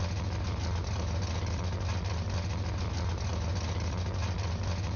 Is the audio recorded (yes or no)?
yes